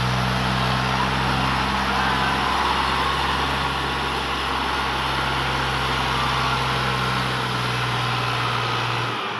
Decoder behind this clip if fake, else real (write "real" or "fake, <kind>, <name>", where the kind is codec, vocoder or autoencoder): real